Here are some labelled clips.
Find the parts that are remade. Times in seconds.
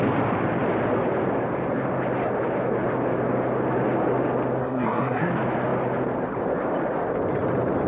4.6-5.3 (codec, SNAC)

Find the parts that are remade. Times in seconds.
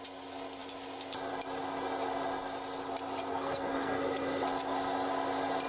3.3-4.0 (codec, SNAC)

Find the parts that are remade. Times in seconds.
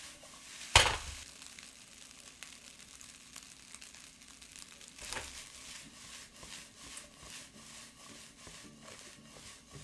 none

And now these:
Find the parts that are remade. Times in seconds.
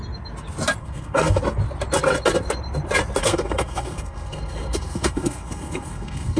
0.8-1.4 (codec, SNAC); 3.2-6.4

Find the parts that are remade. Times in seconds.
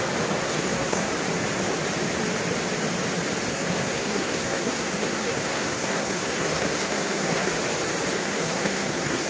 0.4-1.1 (codec, SNAC); 3.5-7.5; 8.1-9.3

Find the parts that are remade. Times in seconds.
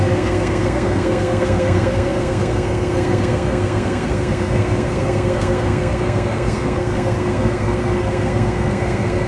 0.0-9.3 (codec, SNAC)